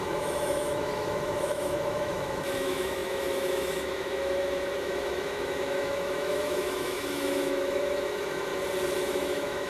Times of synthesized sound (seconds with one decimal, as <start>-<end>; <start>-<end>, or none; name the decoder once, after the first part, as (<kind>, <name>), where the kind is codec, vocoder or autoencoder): 0.0-8.5 (autoencoder, DAC-VAE); 9.0-9.7